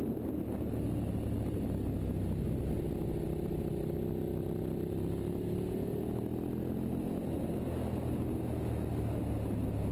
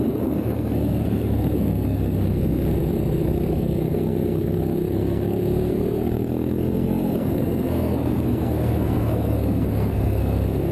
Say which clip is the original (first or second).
first